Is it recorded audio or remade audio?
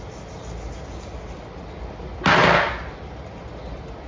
recorded